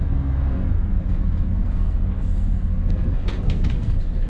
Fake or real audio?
fake